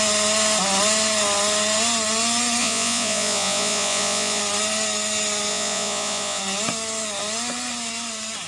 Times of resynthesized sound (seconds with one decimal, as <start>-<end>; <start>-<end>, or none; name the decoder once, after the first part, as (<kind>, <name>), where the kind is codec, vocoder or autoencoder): 2.6-4.4 (vocoder, Vocos); 5.5-6.4